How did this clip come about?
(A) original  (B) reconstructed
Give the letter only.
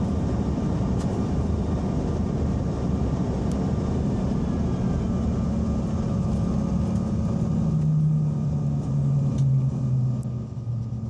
A